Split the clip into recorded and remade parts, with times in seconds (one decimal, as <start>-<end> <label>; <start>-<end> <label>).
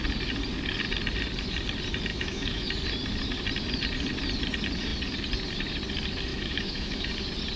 0.0-2.1 recorded; 2.1-2.7 remade; 2.7-6.3 recorded; 6.3-7.1 remade; 7.1-7.6 recorded